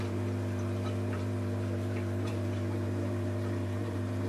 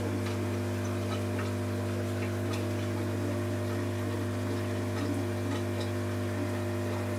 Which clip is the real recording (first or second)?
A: second